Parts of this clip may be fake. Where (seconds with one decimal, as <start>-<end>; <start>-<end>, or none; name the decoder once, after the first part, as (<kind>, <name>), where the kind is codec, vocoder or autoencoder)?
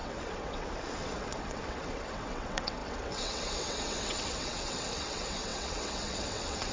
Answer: 0.0-6.7 (vocoder, WaveNeXt)